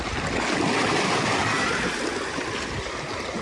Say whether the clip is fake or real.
real